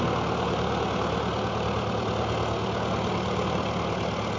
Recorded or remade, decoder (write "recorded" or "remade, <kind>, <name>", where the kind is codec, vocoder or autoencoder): recorded